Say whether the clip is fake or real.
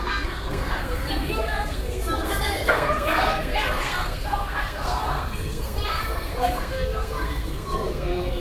fake